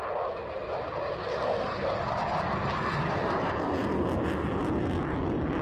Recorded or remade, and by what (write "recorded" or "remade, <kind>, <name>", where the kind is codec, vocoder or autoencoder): recorded